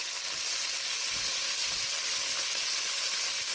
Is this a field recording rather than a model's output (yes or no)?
yes